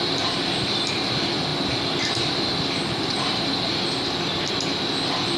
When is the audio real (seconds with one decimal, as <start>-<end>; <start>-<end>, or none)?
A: 0.0-5.4